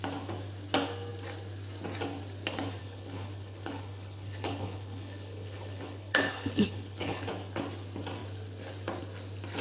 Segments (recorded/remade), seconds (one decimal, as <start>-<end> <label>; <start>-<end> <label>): 0.0-2.8 recorded; 2.8-7.3 remade; 7.3-9.6 recorded